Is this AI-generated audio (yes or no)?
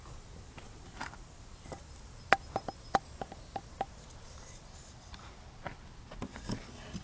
no